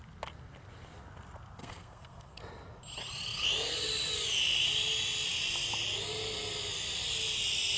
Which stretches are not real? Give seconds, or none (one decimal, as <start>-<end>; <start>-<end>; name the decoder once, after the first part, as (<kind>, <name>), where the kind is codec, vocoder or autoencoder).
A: 1.6-2.4 (codec, SNAC)